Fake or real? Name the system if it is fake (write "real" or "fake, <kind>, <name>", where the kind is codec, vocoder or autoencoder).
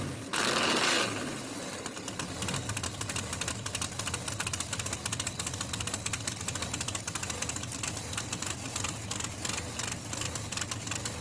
real